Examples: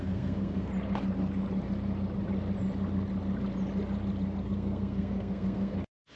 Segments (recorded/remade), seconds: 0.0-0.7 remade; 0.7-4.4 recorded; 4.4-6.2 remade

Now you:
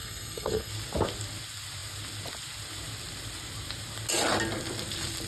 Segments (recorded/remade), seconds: 0.0-0.7 remade; 0.7-5.3 recorded

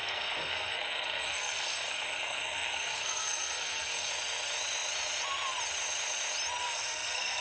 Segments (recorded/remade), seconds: 0.0-4.1 remade; 4.1-6.6 recorded; 6.6-7.4 remade